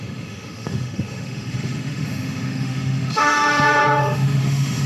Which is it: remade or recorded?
remade